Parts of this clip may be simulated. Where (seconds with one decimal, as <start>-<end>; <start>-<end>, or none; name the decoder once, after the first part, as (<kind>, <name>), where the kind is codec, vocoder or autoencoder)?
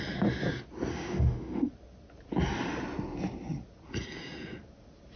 0.9-1.7 (autoencoder, DAC-VAE)